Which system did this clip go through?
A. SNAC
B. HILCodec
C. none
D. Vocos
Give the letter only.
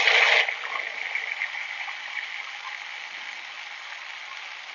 C